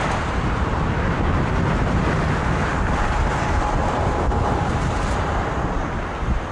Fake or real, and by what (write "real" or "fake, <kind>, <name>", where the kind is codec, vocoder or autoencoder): real